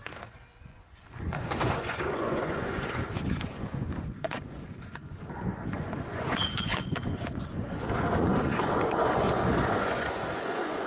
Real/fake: fake